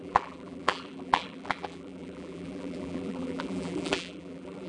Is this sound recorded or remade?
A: remade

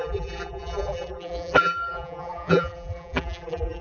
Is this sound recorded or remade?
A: remade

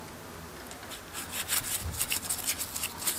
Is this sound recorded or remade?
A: recorded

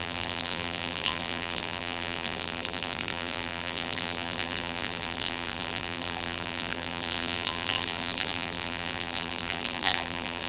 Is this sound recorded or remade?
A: remade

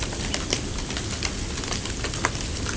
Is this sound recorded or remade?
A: recorded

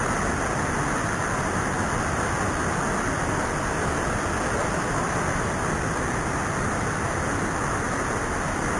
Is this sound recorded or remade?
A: recorded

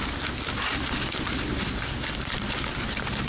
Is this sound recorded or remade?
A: remade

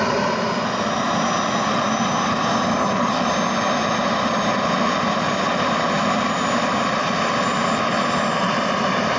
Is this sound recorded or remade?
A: recorded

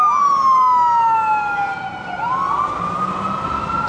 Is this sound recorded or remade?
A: recorded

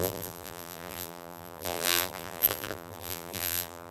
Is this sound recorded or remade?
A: remade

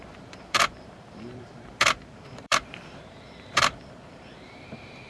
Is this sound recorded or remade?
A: remade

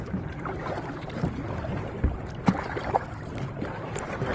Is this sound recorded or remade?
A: remade